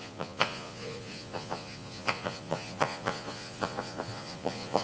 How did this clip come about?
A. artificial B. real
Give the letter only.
A